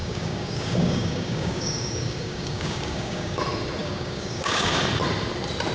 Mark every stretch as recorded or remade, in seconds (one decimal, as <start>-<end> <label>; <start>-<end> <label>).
0.0-3.4 remade; 3.4-3.8 recorded; 3.8-4.8 remade; 4.8-5.7 recorded